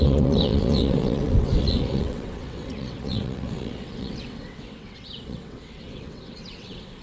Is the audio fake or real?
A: fake